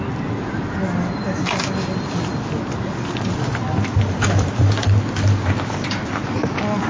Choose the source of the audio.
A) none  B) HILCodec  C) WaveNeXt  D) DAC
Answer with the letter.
A